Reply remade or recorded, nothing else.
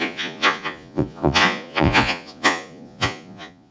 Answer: remade